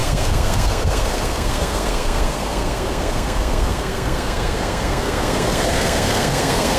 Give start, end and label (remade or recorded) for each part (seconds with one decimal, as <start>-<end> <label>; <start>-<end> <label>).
0.0-6.8 remade